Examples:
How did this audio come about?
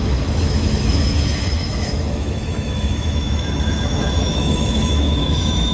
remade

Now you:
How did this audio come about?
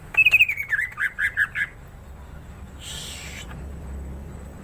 recorded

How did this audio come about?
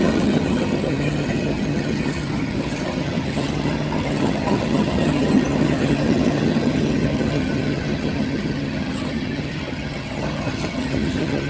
remade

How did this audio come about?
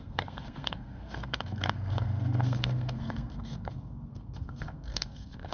remade